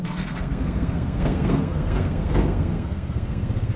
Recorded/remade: remade